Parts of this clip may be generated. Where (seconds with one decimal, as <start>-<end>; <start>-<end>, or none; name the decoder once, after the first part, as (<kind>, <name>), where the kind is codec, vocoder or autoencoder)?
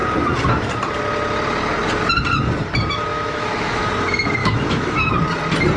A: 3.1-3.9 (autoencoder, DAC-VAE); 4.4-5.1